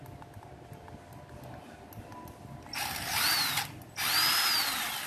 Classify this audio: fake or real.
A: real